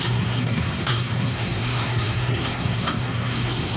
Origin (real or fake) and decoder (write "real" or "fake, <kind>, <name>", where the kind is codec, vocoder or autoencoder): fake, codec, SNAC